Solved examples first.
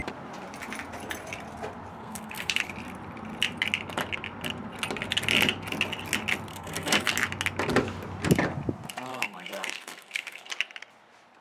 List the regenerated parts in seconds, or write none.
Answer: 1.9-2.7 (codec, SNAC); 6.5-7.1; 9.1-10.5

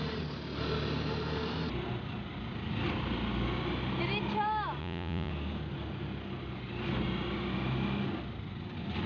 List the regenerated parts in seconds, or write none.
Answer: 4.8-5.3 (vocoder, Vocos)

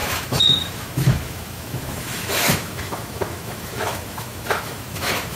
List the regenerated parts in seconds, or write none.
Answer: 0.0-5.4 (autoencoder, DAC-VAE)

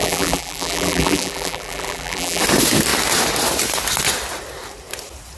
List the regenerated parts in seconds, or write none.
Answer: 0.0-2.4 (vocoder, BigVGAN v2)

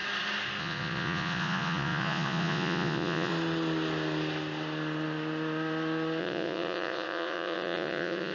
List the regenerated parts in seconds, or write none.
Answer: 0.6-3.3 (vocoder, Vocos); 6.2-8.3

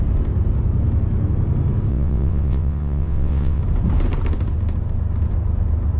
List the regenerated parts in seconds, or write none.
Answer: 1.9-3.6 (vocoder, WaveNeXt)

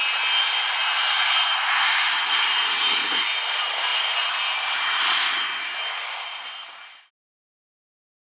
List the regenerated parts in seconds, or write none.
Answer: none